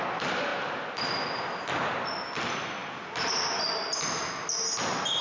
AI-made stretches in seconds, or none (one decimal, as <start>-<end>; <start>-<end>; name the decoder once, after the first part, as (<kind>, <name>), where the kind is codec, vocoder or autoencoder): none